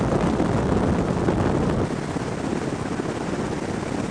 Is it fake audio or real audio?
real